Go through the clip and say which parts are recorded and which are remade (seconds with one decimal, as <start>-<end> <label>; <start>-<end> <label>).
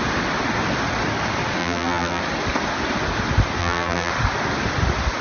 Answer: 0.0-1.6 recorded; 1.6-2.2 remade; 2.2-3.6 recorded; 3.6-4.1 remade; 4.1-5.2 recorded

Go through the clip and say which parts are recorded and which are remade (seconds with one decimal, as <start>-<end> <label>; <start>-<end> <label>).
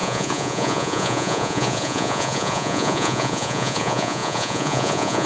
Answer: 0.0-5.3 remade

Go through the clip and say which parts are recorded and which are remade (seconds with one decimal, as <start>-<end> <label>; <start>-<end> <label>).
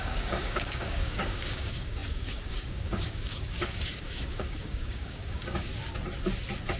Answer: 0.0-5.7 remade; 5.7-6.8 recorded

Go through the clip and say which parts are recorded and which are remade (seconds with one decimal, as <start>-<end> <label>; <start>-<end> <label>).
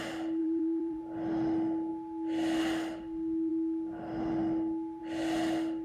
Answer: 0.0-0.4 recorded; 0.4-1.0 remade; 1.0-5.8 recorded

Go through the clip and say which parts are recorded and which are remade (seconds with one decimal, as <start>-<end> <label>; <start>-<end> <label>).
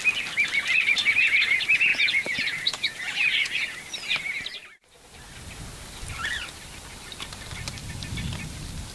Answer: 0.0-1.9 recorded; 1.9-3.8 remade; 3.8-8.9 recorded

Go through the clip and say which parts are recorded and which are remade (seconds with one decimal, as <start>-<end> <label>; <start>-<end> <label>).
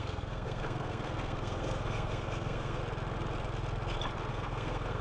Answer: 0.0-2.8 remade; 2.8-4.3 recorded; 4.3-5.0 remade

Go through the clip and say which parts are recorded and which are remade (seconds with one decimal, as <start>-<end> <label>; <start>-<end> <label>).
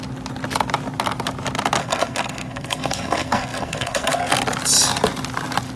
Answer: 0.0-1.8 recorded; 1.8-4.3 remade; 4.3-5.8 recorded